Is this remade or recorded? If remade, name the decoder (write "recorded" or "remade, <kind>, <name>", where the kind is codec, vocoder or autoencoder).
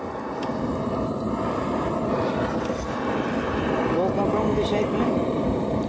recorded